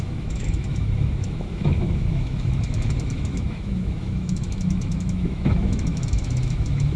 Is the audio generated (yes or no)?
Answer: yes